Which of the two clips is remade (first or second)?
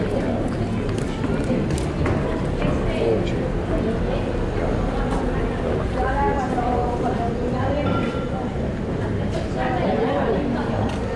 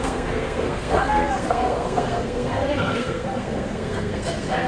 second